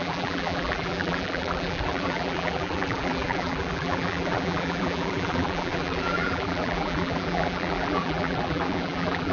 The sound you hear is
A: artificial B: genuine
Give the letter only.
A